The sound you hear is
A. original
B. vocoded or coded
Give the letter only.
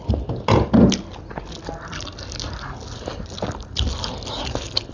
A